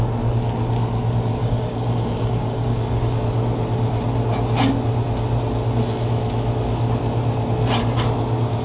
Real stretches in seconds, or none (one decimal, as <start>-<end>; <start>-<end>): 0.0-1.4; 3.2-8.6